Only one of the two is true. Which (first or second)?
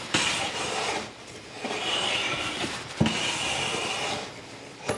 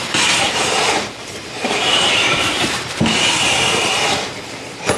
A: first